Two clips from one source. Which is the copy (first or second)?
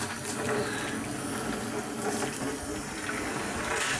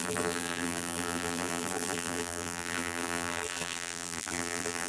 second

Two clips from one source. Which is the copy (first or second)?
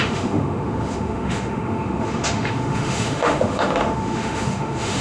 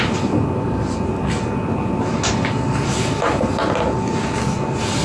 first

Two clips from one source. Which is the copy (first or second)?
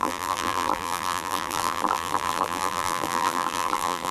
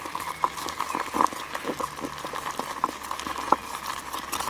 first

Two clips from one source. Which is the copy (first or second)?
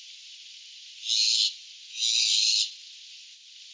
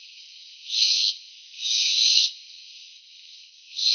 second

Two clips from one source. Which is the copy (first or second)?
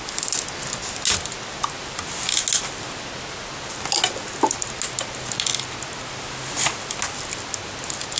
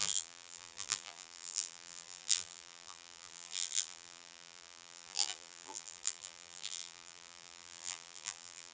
second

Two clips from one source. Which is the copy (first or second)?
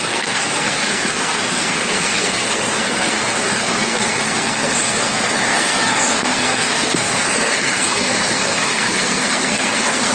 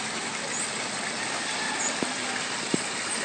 first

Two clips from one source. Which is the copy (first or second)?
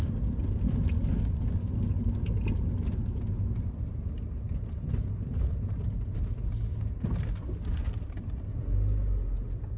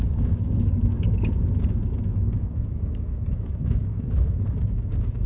second